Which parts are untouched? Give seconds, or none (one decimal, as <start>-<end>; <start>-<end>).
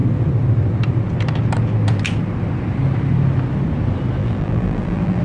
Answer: 0.0-4.2